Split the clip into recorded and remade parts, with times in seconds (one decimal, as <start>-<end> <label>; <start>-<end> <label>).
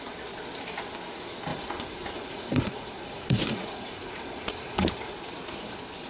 0.0-1.5 recorded; 1.5-5.2 remade; 5.2-6.1 recorded